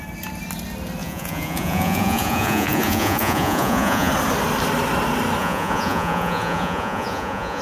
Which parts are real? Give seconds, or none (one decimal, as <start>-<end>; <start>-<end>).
0.0-1.0; 4.1-5.4